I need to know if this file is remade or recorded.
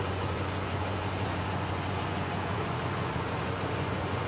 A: remade